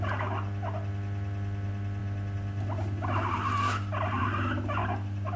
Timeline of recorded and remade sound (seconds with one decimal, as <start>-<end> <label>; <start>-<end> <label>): 0.0-5.4 recorded